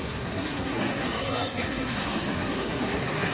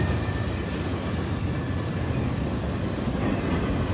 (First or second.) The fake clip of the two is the first